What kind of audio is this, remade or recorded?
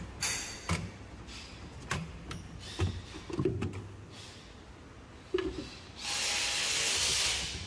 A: recorded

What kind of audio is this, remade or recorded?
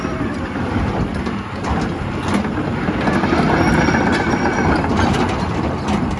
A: recorded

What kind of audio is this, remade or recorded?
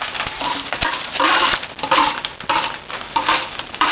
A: recorded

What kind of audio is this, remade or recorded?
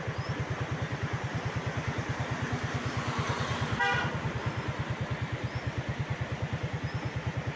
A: recorded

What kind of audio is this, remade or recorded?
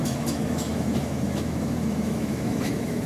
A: remade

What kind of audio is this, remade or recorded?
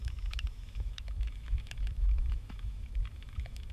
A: remade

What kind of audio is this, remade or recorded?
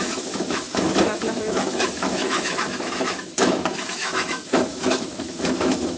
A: remade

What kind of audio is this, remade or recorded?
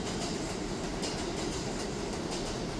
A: recorded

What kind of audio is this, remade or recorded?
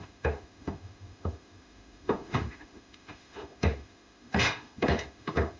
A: remade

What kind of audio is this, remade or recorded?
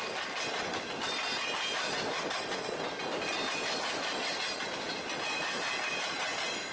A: recorded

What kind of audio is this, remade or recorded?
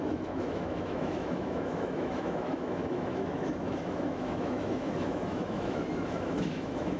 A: remade